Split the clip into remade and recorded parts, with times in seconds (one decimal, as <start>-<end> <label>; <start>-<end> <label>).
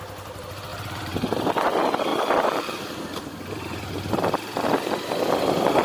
0.0-0.7 recorded; 0.7-1.5 remade; 1.5-5.8 recorded